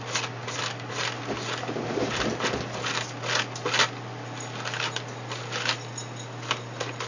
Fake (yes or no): no